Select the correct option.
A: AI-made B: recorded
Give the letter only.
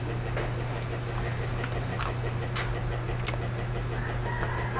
B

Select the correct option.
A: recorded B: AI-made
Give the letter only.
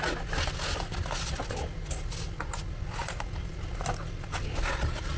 A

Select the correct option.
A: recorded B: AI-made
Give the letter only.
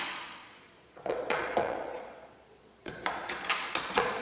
B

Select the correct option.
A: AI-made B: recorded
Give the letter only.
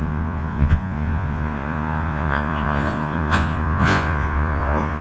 A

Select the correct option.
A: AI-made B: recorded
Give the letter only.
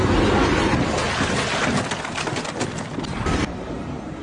B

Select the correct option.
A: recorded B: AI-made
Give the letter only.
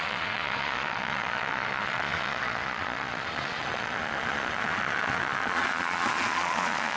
B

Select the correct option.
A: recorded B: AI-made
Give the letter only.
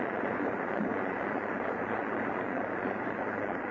B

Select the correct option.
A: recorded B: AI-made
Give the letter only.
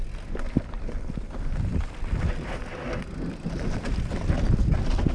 A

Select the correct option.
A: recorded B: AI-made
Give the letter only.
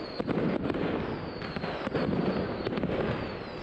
A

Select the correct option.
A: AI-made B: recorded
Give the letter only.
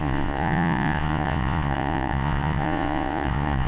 A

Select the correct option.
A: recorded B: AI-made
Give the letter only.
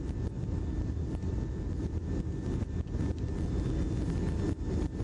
A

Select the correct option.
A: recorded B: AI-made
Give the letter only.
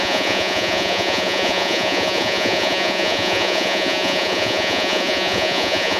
B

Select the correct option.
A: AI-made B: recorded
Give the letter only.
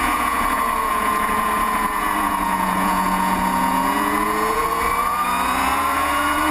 A